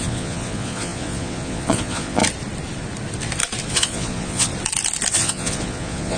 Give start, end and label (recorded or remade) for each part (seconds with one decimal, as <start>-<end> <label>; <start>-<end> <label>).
0.0-2.2 remade; 2.2-3.7 recorded; 3.7-4.5 remade; 4.5-5.1 recorded; 5.1-6.2 remade